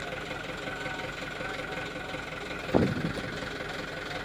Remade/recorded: recorded